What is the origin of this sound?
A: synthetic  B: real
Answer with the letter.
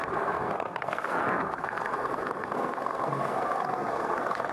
A